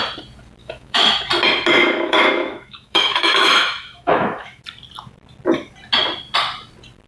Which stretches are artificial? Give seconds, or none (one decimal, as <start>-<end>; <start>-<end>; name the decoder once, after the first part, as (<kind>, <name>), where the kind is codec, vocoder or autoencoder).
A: 0.6-1.2 (autoencoder, DAC-VAE); 1.8-4.6